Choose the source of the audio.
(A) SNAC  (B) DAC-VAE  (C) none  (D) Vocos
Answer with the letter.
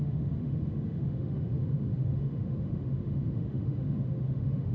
B